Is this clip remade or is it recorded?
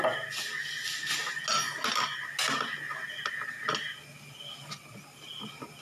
recorded